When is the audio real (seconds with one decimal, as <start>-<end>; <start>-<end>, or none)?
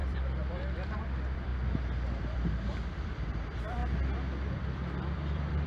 1.5-2.2; 3.8-4.5